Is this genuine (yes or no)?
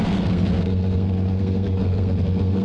no